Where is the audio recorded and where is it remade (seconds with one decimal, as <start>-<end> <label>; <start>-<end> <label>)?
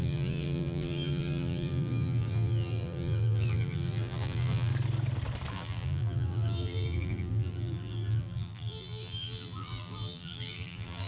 0.0-4.7 remade; 4.7-5.5 recorded; 5.5-11.1 remade